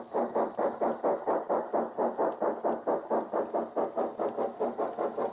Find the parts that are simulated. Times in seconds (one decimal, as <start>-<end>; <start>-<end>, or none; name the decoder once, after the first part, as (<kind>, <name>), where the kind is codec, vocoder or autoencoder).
none